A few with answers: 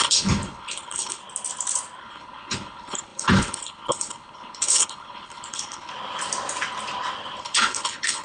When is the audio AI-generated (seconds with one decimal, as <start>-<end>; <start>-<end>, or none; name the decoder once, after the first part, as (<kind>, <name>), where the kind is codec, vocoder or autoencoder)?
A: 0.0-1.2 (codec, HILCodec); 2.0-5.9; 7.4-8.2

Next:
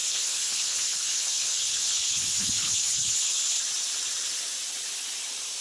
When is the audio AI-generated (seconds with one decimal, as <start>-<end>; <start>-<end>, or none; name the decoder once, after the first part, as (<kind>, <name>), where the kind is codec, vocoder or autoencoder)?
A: 0.0-3.4 (codec, HILCodec)

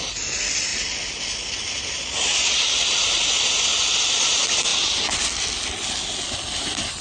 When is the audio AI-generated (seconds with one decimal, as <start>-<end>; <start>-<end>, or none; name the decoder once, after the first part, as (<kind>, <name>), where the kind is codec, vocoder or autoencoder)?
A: none

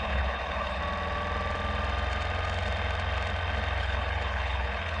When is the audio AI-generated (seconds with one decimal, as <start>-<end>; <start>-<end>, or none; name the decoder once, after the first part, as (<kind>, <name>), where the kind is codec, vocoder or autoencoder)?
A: 0.0-0.8 (codec, HILCodec); 3.8-5.0

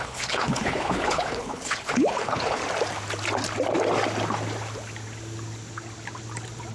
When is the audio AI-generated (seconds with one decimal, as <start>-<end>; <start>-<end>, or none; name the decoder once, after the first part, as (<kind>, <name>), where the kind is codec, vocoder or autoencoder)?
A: 0.0-2.6 (codec, HILCodec)